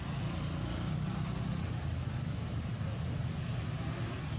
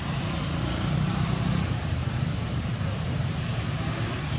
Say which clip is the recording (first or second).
first